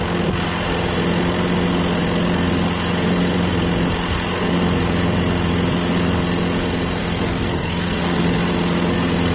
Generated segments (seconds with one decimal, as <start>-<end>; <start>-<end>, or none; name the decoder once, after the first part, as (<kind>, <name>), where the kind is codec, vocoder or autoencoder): 7.0-8.2 (codec, SNAC)